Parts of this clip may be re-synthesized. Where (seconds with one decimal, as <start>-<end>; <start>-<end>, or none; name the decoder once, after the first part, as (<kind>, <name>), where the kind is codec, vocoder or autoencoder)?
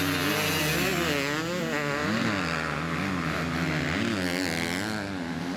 none